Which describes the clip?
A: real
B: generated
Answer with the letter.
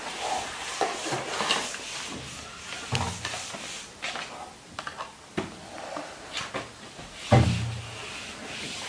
A